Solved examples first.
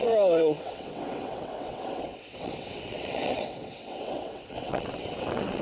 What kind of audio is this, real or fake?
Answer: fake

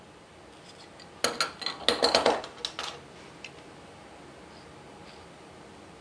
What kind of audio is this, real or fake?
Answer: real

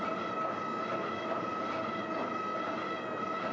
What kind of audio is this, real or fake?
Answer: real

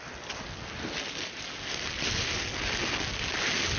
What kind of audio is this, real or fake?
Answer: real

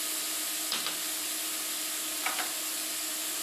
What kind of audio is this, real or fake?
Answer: real